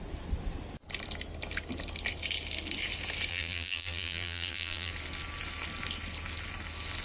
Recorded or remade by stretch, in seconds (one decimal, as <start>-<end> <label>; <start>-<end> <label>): 0.0-3.3 recorded; 3.3-4.9 remade; 4.9-7.0 recorded